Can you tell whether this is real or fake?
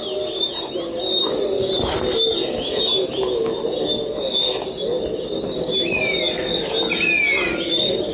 real